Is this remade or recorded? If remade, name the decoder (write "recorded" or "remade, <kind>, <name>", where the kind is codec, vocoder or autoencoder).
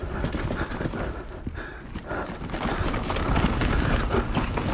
recorded